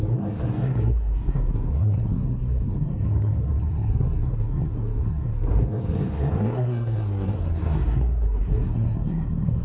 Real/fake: fake